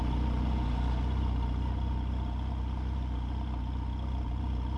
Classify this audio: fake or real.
real